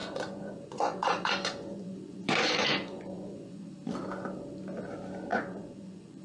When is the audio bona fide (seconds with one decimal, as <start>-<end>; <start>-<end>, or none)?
3.7-5.3

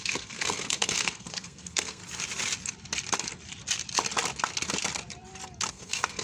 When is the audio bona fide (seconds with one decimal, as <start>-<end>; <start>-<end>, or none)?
2.0-5.7

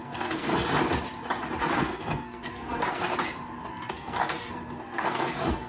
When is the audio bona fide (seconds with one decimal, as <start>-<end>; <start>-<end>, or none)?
0.5-1.7; 3.1-3.7

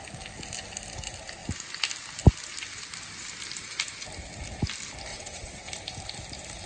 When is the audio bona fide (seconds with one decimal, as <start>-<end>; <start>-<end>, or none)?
0.0-5.1; 5.7-6.7

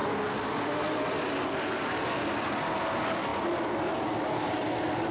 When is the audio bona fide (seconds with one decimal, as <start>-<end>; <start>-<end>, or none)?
0.0-5.1

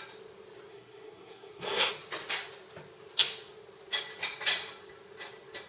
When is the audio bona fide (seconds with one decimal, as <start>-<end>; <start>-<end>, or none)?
0.0-0.7; 1.9-5.7